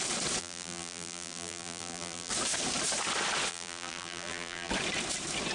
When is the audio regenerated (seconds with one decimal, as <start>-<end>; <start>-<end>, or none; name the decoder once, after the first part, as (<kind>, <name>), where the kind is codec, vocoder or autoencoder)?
0.4-2.3 (vocoder, BigVGAN v2); 3.5-4.7